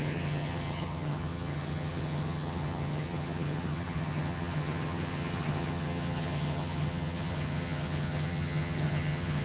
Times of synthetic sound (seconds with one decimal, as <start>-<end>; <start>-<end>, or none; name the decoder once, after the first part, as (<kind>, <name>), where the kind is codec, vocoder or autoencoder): 0.0-9.4 (vocoder, HiFi-GAN)